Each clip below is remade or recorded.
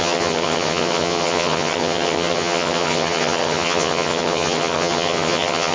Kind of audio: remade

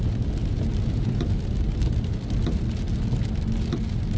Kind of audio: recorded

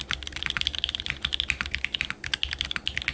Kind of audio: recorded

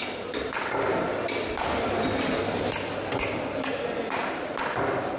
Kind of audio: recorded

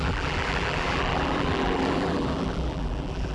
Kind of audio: remade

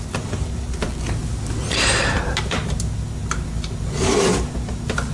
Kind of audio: recorded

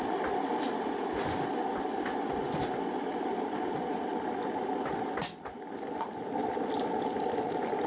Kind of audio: recorded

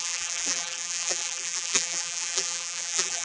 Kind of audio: remade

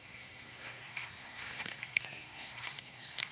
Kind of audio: remade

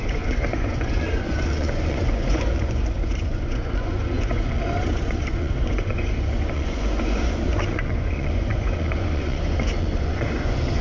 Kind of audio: remade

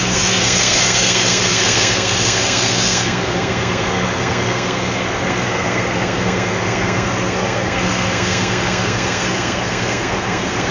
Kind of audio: remade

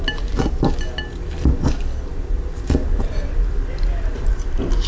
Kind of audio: recorded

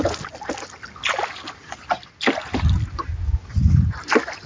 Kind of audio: recorded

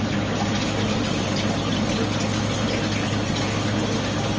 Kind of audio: recorded